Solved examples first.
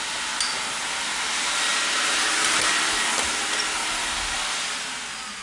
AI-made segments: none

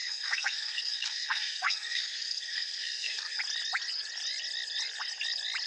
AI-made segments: 0.0-3.4 (codec, SNAC)

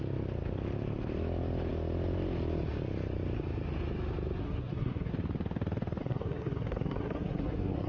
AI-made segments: 4.4-5.1 (codec, SNAC); 6.0-7.9

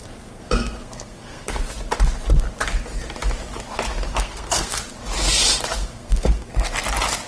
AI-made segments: 0.0-1.6 (codec, SNAC); 4.1-4.8; 5.8-6.5

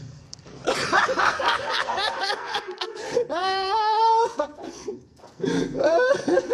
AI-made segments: 0.0-0.6 (codec, SNAC); 1.2-6.5

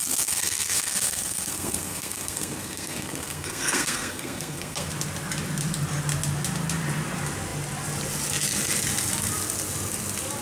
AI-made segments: 0.0-4.9 (codec, SNAC)

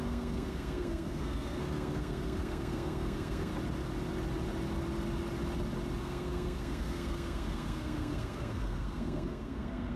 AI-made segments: 0.0-3.5 (codec, SNAC); 6.0-10.0